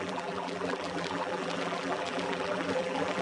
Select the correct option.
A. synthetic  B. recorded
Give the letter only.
A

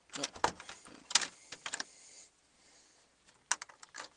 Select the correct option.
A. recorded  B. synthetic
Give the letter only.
A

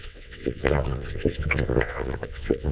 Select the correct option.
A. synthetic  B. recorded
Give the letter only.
A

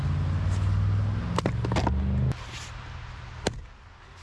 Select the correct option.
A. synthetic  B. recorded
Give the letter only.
B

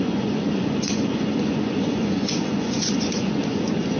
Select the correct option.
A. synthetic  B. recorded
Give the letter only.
A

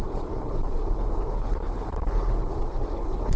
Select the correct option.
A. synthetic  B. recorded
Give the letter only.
A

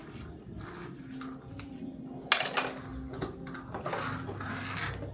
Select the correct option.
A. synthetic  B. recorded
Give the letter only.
B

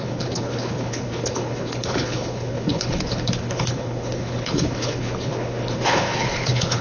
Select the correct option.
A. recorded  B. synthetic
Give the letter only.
B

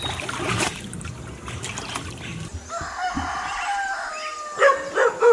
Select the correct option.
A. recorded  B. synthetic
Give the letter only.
A